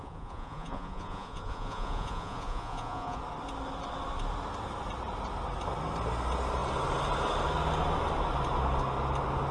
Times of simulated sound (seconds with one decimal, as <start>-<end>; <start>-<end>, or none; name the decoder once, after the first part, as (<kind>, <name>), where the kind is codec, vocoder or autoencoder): 0.0-3.2 (vocoder, Vocos)